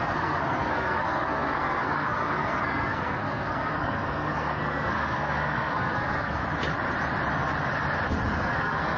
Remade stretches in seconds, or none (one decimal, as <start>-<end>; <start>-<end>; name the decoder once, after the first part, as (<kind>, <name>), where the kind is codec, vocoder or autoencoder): 0.0-6.4 (codec, SNAC); 8.3-9.0